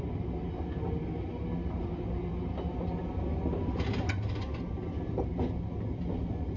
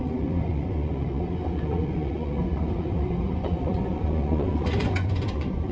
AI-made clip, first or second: second